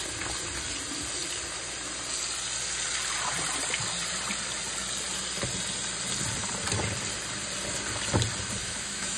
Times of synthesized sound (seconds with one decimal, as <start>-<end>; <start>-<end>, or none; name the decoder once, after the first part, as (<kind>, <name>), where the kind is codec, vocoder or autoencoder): 8.6-9.2 (autoencoder, DAC-VAE)